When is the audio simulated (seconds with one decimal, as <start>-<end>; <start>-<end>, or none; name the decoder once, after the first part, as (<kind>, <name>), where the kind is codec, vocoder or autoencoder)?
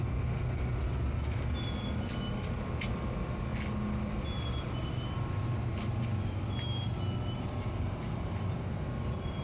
none